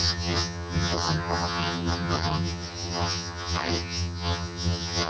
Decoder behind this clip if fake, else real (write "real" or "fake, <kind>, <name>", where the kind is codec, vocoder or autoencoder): fake, vocoder, HiFi-GAN